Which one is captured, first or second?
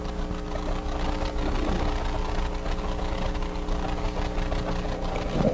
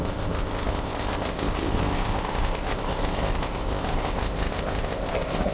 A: first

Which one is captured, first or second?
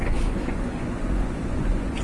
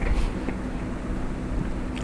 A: second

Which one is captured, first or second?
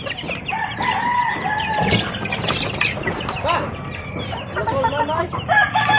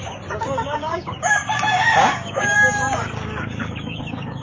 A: first